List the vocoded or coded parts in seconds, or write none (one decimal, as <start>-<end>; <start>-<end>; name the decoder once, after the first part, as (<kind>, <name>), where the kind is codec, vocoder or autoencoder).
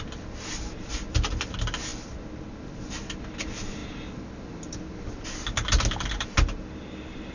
none